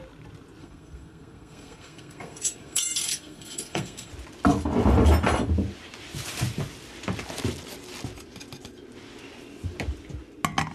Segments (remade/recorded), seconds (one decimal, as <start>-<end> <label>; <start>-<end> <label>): 0.0-0.6 recorded; 0.6-4.1 remade; 4.1-10.7 recorded